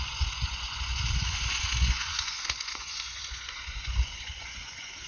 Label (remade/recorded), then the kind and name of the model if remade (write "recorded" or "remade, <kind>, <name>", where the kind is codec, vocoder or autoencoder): remade, vocoder, Vocos